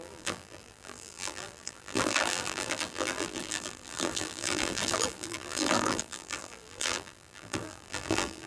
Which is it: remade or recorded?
remade